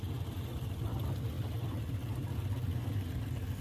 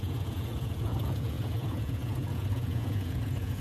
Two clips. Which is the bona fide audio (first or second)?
first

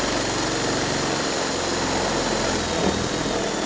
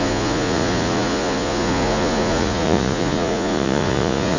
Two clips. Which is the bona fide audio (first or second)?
first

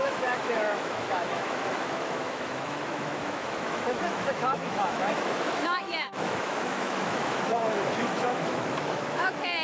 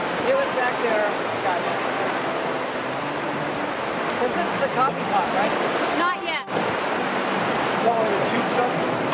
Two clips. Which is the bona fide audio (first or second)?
second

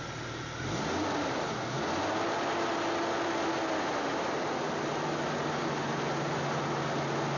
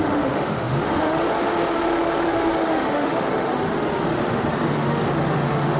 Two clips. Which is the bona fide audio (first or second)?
first